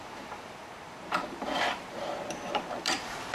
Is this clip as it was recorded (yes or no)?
no